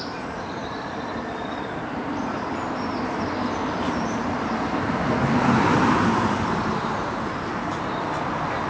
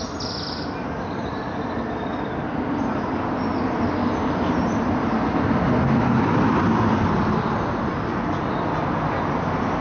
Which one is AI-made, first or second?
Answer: first